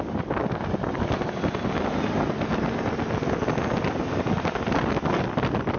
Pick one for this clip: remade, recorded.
recorded